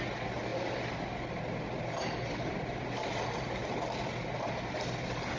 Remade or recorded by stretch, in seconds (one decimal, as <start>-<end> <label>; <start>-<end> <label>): 0.0-5.4 recorded